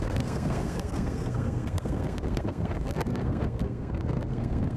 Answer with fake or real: fake